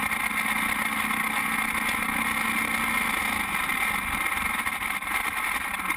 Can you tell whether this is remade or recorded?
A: recorded